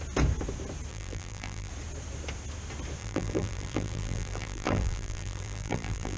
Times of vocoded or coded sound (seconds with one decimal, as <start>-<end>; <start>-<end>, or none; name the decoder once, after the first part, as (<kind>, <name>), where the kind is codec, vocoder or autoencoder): 0.9-1.7 (vocoder, BigVGAN v2); 3.0-6.2